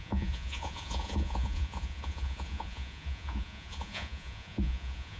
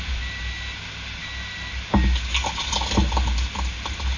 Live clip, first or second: second